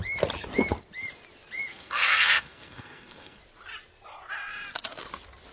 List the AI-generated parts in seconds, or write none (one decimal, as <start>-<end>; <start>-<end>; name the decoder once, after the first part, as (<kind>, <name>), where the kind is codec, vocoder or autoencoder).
1.7-3.4 (codec, SNAC)